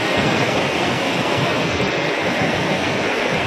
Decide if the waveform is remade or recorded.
remade